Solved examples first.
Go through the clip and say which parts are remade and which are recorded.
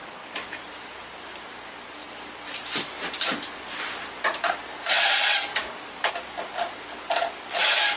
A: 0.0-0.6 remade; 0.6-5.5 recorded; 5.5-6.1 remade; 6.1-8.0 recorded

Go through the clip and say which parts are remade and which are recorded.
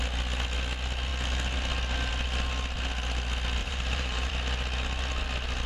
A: 0.0-3.6 recorded; 3.6-4.3 remade; 4.3-5.7 recorded